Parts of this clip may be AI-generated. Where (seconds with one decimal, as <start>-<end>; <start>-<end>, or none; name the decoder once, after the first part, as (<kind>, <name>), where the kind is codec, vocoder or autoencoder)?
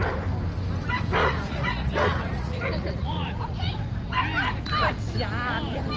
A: 1.2-3.7 (vocoder, Vocos)